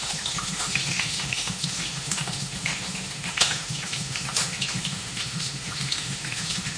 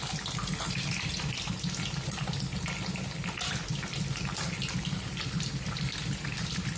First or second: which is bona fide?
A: second